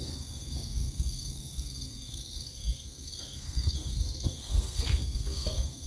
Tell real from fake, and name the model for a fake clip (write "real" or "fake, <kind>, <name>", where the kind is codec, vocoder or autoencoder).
fake, codec, SNAC